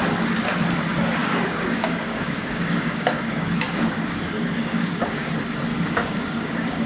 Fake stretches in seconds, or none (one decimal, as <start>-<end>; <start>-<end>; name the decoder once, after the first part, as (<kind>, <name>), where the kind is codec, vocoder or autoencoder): 1.2-5.3 (codec, DAC); 5.7-6.9